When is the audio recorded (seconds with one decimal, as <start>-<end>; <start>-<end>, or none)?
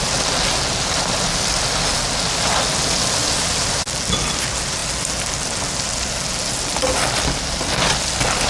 0.0-8.5